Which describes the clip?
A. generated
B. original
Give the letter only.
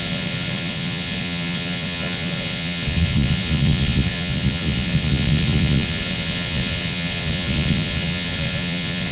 A